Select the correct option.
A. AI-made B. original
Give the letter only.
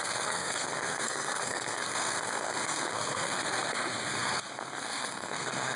A